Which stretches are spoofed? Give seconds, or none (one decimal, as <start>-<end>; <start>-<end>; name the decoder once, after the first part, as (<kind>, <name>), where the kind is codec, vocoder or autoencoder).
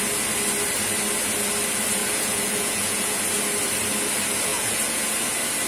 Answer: 2.0-3.2 (vocoder, Vocos); 4.5-5.1